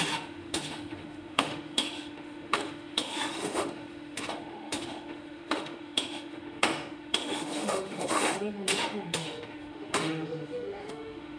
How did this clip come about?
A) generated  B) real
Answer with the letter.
A